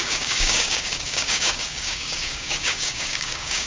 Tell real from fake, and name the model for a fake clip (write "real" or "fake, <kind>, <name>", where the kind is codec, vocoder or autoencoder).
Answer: fake, codec, DAC